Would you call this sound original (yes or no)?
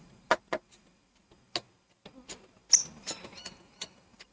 yes